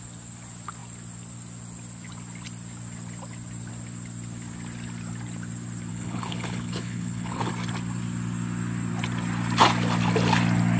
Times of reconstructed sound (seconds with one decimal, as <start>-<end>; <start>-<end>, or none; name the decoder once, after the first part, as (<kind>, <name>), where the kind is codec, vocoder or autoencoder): 5.9-7.5 (codec, HILCodec)